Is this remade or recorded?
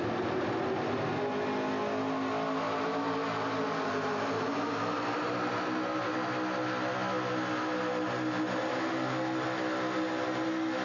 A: recorded